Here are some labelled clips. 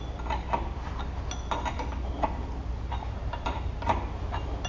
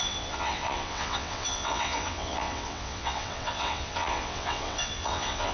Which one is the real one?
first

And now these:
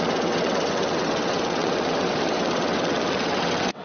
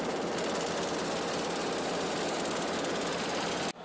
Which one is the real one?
second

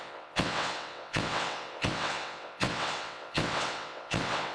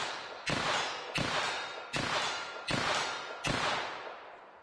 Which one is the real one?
second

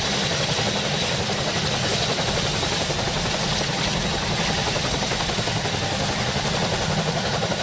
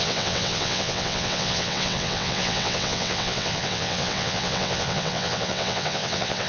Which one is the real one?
first